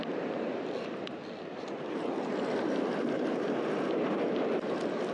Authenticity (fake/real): real